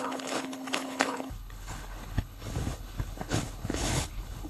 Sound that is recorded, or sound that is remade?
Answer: remade